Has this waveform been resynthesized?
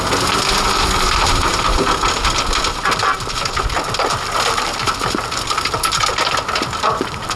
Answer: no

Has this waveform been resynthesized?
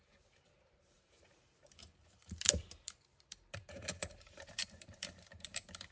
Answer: yes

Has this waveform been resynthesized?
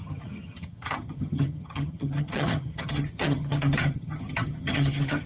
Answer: yes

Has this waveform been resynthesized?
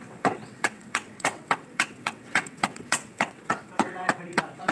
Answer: yes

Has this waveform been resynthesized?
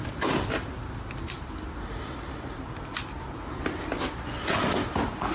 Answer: no